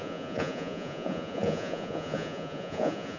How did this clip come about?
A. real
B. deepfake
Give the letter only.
B